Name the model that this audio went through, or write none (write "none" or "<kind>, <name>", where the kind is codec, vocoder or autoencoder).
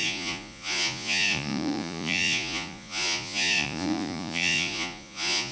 vocoder, Vocos